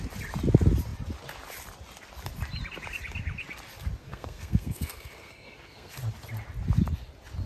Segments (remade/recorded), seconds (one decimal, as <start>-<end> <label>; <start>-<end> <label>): 0.0-4.0 recorded; 4.0-5.9 remade; 5.9-7.5 recorded